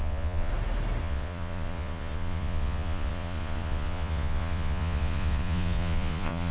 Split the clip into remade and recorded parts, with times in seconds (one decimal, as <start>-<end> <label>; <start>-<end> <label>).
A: 0.0-0.5 remade; 0.5-1.0 recorded; 1.0-6.5 remade

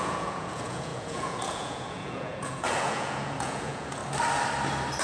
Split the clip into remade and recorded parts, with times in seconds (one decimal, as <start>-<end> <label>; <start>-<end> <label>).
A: 0.0-4.0 remade; 4.0-5.0 recorded

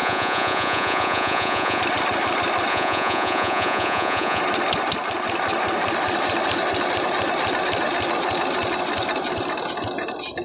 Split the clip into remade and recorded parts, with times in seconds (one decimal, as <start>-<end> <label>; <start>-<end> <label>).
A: 0.0-1.8 remade; 1.8-2.7 recorded; 2.7-4.4 remade; 4.4-10.4 recorded